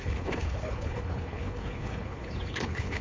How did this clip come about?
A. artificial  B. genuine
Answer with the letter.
A